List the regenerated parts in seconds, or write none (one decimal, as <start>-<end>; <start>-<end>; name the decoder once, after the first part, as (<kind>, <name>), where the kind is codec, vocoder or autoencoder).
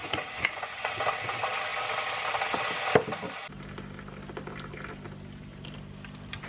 0.0-0.9 (vocoder, Vocos)